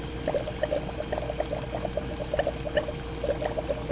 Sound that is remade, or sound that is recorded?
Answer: recorded